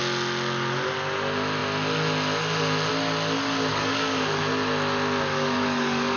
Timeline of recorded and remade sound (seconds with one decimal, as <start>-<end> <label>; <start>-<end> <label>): 0.0-3.7 recorded; 3.7-4.4 remade; 4.4-5.3 recorded; 5.3-6.2 remade